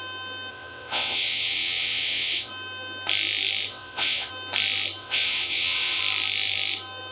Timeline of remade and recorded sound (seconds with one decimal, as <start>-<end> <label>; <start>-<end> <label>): 0.0-0.5 recorded; 0.5-2.5 remade; 2.5-3.7 recorded; 3.7-4.3 remade; 4.3-5.0 recorded; 5.0-6.0 remade; 6.0-7.1 recorded